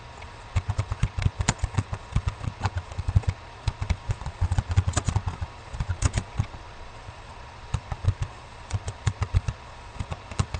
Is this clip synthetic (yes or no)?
yes